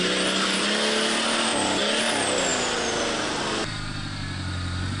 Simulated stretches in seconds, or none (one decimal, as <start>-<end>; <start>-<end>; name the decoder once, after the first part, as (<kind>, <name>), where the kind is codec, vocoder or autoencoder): none